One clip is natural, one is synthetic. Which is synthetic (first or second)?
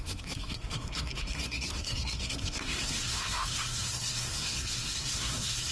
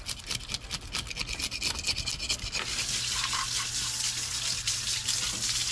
first